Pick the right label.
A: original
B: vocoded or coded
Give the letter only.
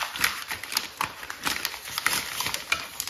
A